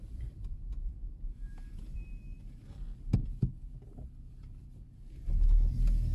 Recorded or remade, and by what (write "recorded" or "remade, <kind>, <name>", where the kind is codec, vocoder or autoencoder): remade, vocoder, BigVGAN v2